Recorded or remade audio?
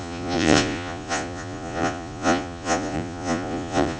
remade